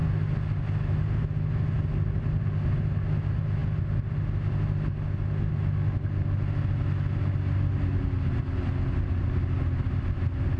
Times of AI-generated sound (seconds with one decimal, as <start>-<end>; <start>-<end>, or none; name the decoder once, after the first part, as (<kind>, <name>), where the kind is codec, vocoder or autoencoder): none